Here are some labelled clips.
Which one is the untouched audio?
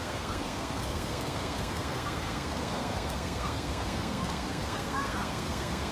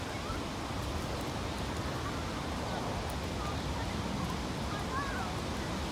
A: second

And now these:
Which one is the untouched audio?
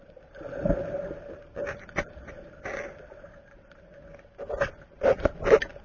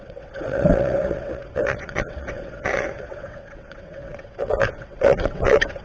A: first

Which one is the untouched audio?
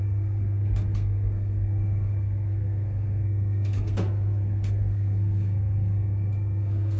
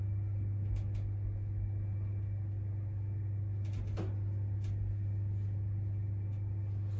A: second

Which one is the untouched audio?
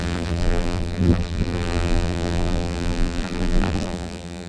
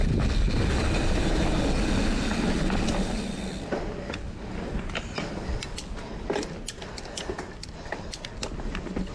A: second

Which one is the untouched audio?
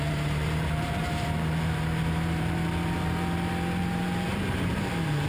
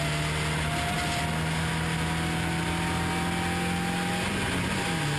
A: second